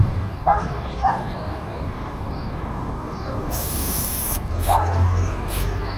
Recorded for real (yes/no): no